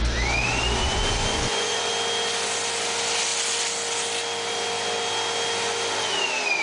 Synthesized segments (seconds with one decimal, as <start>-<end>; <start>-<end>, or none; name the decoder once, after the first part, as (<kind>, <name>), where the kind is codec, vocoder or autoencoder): 0.8-1.9 (vocoder, Vocos)